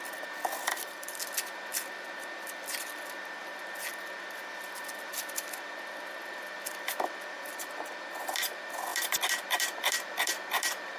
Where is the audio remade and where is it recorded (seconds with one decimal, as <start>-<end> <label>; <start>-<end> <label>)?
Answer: 0.0-0.7 recorded; 0.7-1.2 remade; 1.2-1.7 recorded; 1.7-3.7 remade; 3.7-11.0 recorded